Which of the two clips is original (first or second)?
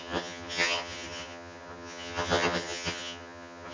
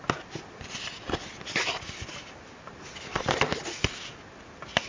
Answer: second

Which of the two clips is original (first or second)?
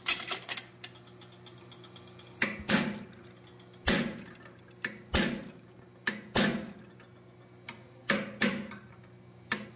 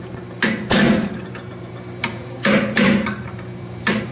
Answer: first